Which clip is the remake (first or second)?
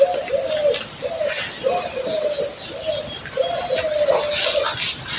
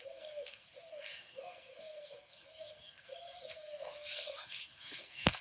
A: second